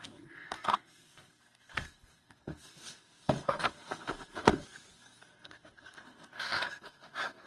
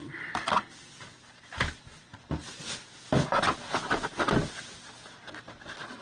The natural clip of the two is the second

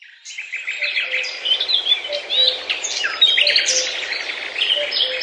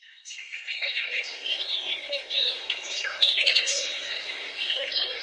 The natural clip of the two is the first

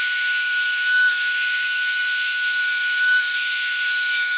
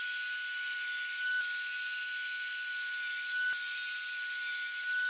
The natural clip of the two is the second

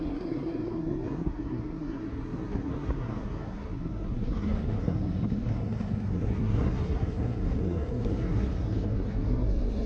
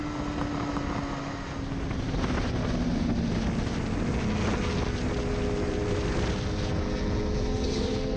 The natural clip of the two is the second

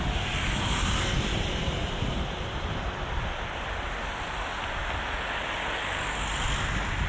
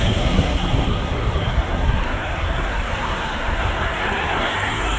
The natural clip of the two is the first